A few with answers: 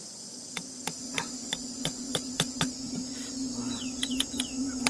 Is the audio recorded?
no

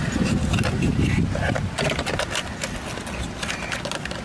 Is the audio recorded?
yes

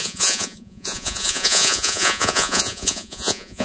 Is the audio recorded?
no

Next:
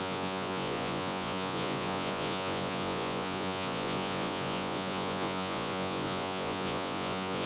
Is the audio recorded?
no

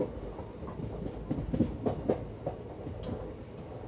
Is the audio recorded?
yes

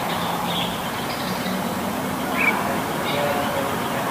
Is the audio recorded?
yes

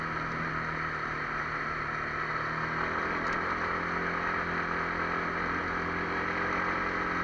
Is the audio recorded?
yes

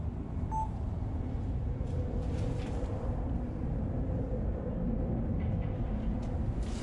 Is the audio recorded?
yes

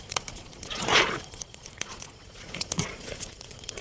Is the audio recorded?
no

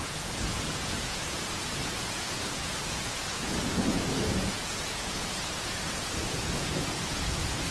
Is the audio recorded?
no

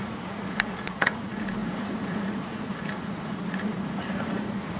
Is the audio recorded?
no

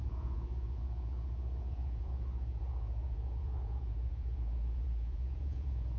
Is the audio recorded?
no